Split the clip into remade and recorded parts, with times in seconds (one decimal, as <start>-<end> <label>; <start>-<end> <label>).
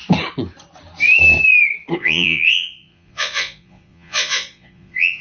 0.0-2.0 recorded; 2.0-5.2 remade